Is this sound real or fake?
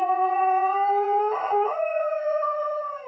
fake